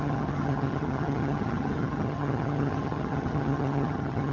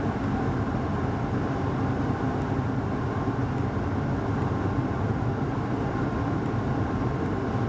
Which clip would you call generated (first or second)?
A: first